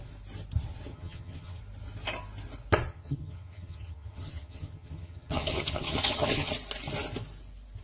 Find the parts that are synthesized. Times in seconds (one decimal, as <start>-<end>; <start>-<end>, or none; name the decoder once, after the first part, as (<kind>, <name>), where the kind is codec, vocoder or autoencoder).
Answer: 0.9-1.6 (vocoder, HiFi-GAN); 2.9-6.5